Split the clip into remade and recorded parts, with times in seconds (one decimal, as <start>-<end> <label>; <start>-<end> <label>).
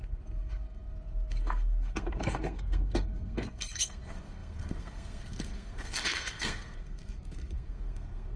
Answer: 0.0-8.4 remade